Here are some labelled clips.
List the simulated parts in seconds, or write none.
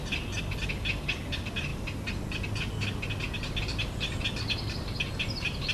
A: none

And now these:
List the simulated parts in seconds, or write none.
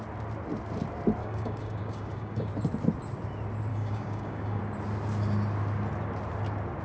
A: 1.2-2.5 (codec, DAC); 3.7-4.6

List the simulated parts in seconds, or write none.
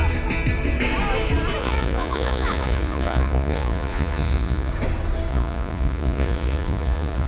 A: 1.6-4.7 (vocoder, Vocos); 5.3-7.3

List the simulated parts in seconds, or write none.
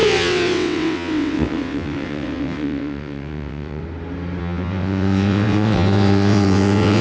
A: 0.0-3.8 (vocoder, WaveNeXt); 4.4-7.0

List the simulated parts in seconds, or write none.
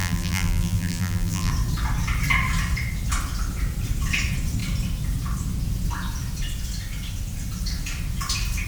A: 0.0-1.5 (vocoder, BigVGAN v2)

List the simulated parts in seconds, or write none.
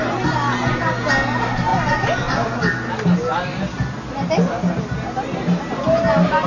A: none